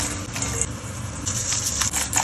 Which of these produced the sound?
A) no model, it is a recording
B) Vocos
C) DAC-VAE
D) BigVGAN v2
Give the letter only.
A